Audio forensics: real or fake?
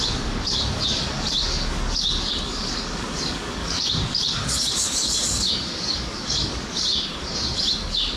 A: fake